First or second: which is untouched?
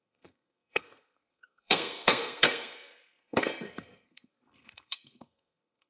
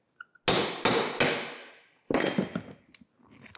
second